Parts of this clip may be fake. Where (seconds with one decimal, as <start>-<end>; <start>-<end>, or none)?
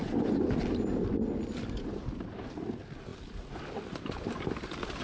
none